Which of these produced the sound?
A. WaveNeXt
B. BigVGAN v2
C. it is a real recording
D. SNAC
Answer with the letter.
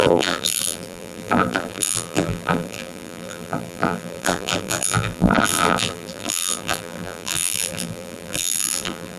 B